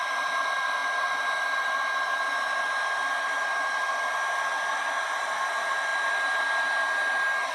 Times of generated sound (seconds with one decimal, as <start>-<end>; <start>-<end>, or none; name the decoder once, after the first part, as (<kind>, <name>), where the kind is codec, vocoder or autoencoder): none